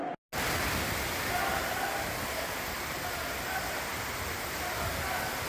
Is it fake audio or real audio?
real